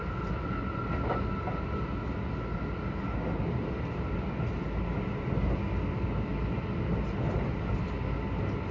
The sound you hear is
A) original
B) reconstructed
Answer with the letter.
A